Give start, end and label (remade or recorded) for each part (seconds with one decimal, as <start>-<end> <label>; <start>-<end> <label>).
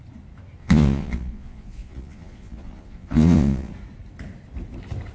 0.0-0.6 recorded; 0.6-3.7 remade; 3.7-5.1 recorded